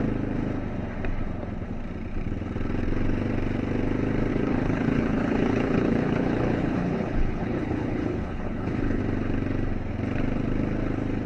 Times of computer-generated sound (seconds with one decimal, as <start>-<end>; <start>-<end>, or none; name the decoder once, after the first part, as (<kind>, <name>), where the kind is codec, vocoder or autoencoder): 4.3-9.0 (codec, HILCodec)